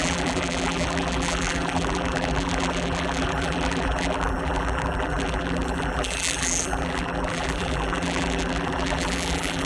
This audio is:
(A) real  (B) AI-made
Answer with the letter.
B